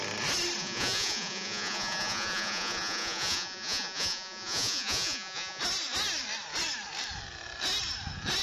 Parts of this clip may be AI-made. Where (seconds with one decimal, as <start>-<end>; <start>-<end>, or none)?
0.6-5.6